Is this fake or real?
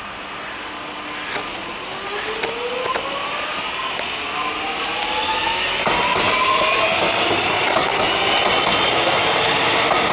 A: real